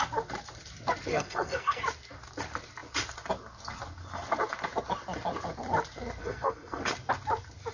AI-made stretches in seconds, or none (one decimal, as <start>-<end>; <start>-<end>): 1.1-1.8; 6.2-6.8